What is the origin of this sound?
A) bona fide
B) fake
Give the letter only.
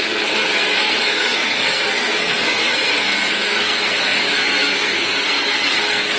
B